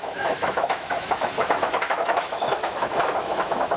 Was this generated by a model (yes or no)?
yes